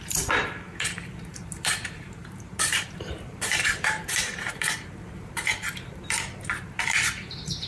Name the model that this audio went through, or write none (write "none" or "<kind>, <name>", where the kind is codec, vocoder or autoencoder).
vocoder, BigVGAN v2